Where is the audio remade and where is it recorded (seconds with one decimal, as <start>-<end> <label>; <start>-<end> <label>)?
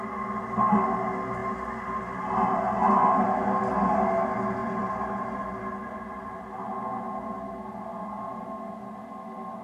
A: 0.0-9.6 recorded